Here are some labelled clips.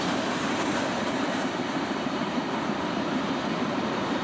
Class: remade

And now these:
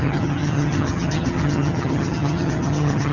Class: remade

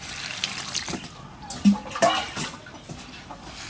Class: recorded